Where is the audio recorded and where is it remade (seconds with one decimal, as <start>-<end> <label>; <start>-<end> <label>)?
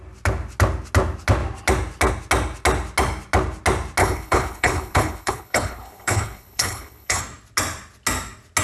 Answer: 0.0-4.0 recorded; 4.0-7.2 remade; 7.2-8.6 recorded